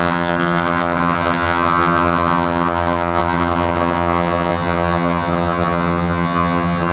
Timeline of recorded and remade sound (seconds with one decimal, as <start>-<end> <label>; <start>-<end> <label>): 0.0-6.9 remade